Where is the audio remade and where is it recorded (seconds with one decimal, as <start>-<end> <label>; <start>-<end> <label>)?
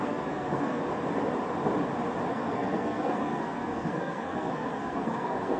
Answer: 0.0-0.8 remade; 0.8-2.3 recorded; 2.3-5.6 remade